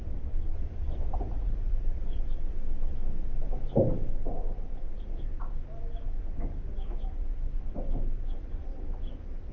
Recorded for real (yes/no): yes